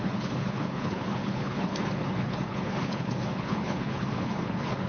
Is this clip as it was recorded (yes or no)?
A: no